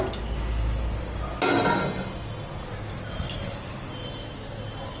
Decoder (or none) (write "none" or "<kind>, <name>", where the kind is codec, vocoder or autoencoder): none